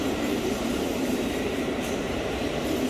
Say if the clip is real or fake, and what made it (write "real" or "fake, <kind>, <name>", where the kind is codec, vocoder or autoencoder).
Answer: fake, vocoder, BigVGAN v2